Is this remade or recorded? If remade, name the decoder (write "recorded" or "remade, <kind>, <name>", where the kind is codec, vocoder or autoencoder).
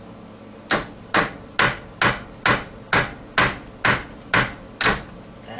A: recorded